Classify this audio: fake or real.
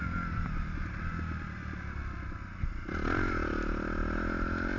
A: real